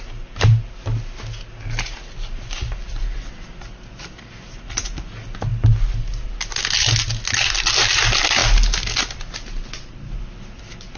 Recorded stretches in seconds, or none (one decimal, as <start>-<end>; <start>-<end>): 0.0-11.0